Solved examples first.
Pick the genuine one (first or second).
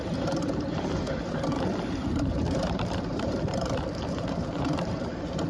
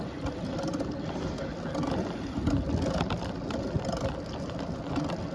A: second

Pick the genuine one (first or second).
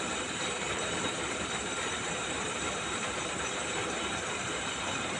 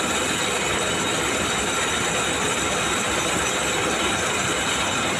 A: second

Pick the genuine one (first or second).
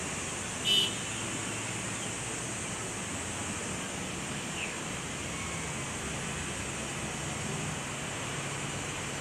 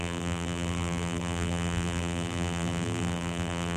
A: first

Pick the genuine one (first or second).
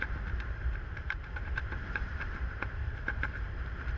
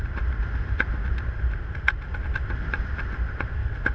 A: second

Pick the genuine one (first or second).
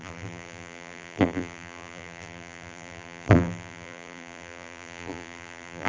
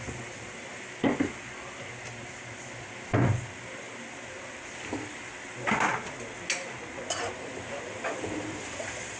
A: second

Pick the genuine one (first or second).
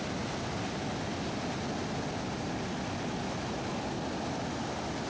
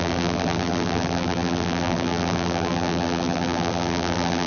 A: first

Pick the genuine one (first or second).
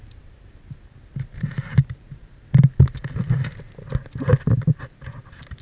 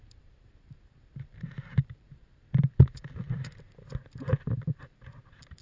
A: first